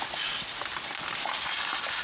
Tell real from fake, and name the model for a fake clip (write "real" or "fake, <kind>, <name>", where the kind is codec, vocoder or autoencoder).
real